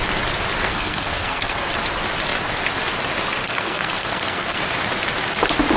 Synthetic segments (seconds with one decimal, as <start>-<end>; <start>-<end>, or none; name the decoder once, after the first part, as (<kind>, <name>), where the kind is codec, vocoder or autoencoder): 0.6-1.7 (codec, SNAC); 3.4-4.6